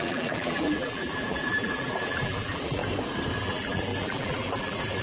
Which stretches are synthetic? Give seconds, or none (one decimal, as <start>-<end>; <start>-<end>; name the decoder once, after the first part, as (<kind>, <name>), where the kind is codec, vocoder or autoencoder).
0.0-2.8 (vocoder, BigVGAN v2); 3.4-5.0